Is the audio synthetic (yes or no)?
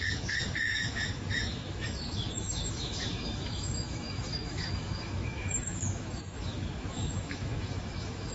yes